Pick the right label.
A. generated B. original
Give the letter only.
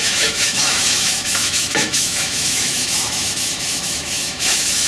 A